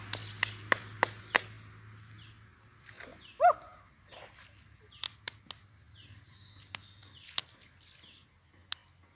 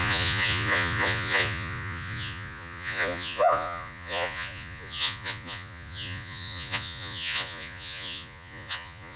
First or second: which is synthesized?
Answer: second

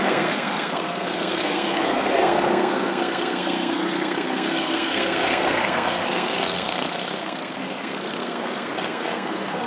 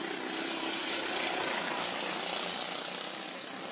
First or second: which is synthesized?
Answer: first